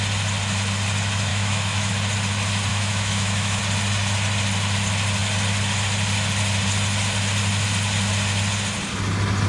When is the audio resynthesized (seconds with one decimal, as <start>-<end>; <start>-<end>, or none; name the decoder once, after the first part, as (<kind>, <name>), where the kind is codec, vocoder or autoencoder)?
1.3-1.9 (autoencoder, DAC-VAE); 2.7-3.6